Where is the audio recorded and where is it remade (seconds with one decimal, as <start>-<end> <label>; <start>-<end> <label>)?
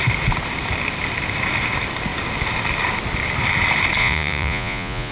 0.0-4.0 recorded; 4.0-5.1 remade